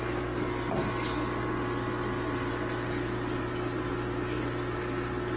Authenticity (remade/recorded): recorded